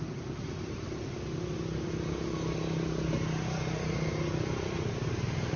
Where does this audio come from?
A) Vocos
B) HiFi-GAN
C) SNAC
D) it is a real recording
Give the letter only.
D